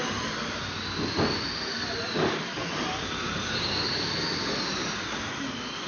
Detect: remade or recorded recorded